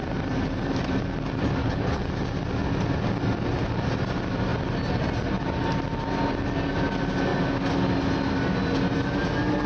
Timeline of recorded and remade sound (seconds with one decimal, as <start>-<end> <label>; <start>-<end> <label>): 0.0-1.6 recorded; 1.6-2.1 remade; 2.1-9.7 recorded